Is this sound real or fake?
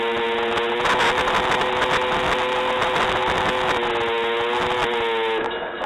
real